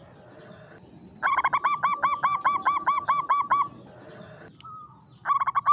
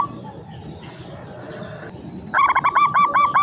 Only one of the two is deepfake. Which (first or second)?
second